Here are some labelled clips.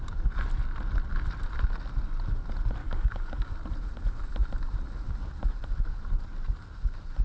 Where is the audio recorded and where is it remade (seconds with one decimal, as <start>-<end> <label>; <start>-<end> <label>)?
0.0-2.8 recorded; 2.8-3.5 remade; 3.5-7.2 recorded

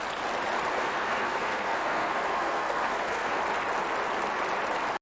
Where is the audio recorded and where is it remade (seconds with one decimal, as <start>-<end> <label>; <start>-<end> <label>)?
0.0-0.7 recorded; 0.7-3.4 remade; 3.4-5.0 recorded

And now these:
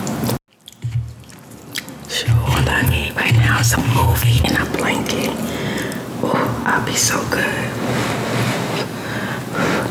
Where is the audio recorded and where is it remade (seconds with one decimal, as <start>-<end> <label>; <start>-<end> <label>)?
0.0-2.7 recorded; 2.7-3.3 remade; 3.3-3.8 recorded; 3.8-4.4 remade; 4.4-9.9 recorded

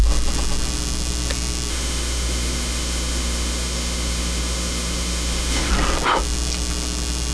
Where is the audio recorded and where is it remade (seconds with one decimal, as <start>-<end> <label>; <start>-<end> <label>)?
0.0-1.7 recorded; 1.7-5.7 remade; 5.7-7.3 recorded